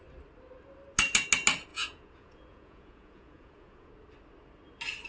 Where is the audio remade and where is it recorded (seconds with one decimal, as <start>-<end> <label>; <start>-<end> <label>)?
0.0-1.7 recorded; 1.7-3.9 remade; 3.9-5.1 recorded